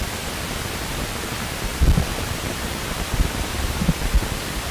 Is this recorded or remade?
recorded